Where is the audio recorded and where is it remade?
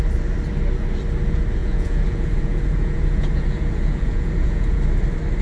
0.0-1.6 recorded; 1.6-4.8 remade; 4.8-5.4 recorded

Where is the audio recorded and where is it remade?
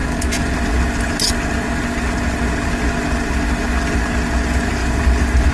0.0-5.5 recorded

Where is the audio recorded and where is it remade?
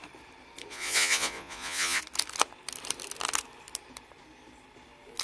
0.0-0.7 recorded; 0.7-2.0 remade; 2.0-5.2 recorded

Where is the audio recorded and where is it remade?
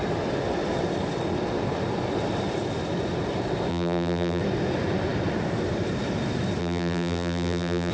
0.0-3.7 recorded; 3.7-4.4 remade; 4.4-6.6 recorded; 6.6-7.9 remade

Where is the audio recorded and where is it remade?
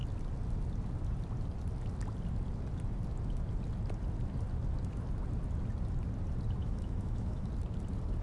0.0-6.6 recorded; 6.6-7.5 remade; 7.5-8.2 recorded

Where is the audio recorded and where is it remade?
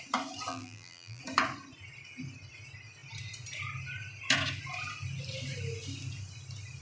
0.0-0.5 recorded; 0.5-1.2 remade; 1.2-6.8 recorded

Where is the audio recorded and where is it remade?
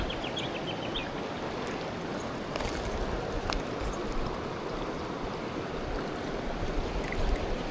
0.0-7.7 recorded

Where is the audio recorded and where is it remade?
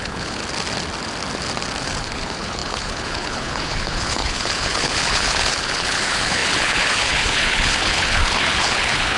0.0-0.4 remade; 0.4-1.8 recorded; 1.8-9.2 remade